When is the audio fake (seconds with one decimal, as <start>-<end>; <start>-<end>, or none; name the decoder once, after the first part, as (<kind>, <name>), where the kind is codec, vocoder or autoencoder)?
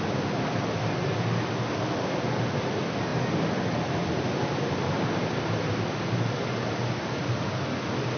none